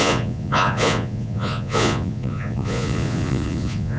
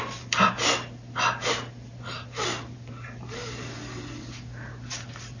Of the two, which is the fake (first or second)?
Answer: first